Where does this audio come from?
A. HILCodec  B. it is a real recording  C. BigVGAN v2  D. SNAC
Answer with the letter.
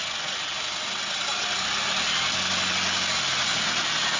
B